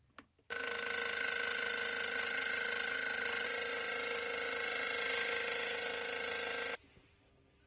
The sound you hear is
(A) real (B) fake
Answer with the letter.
A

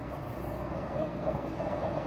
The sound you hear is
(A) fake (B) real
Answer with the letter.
A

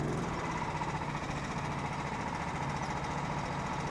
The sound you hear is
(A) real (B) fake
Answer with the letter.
A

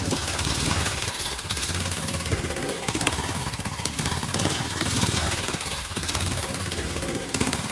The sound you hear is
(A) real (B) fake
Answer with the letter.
B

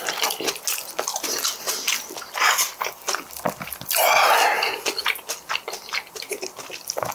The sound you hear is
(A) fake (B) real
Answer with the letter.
B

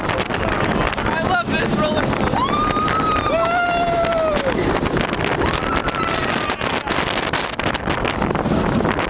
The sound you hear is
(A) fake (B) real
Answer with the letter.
B